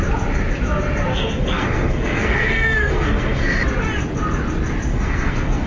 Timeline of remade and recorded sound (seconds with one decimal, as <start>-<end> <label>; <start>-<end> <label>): 0.0-1.1 recorded; 1.1-3.6 remade; 3.6-4.9 recorded; 4.9-5.7 remade